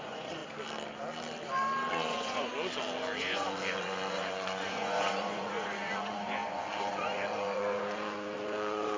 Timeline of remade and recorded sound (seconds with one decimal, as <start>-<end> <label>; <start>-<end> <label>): 0.0-0.4 remade; 0.4-1.9 recorded; 1.9-2.5 remade; 2.5-3.2 recorded; 3.2-9.0 remade